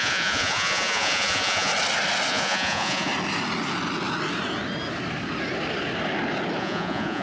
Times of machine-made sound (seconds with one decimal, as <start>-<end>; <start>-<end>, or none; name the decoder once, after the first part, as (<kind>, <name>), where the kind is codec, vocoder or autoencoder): 0.0-1.7 (vocoder, Vocos); 2.3-3.1; 6.6-7.2